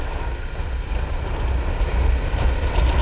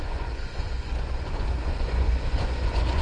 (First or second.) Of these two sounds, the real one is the first